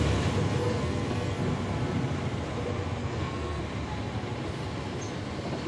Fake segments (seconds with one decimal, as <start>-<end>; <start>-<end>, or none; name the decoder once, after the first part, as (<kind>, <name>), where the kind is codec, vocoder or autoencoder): 0.6-1.4 (codec, SNAC); 3.0-3.6